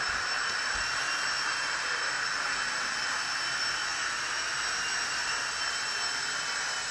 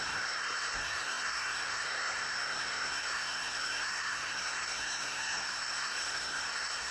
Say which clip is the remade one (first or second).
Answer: second